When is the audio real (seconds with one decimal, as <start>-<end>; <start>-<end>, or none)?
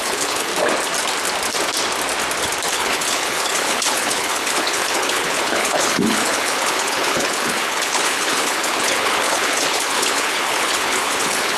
0.5-2.7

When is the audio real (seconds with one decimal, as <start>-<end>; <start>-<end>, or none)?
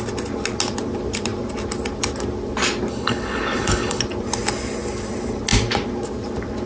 0.0-2.9; 4.0-6.7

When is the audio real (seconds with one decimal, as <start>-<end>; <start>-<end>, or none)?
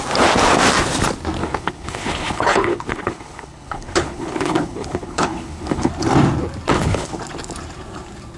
0.0-1.4; 5.9-6.7; 7.2-8.4